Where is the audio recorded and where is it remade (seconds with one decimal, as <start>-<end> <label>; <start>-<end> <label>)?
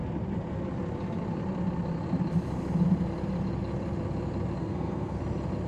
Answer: 0.0-4.6 recorded; 4.6-5.2 remade; 5.2-5.7 recorded